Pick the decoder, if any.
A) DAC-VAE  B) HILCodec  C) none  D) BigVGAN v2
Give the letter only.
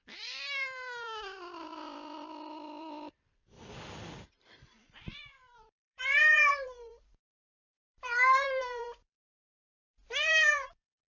D